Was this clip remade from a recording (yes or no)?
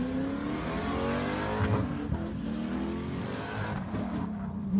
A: no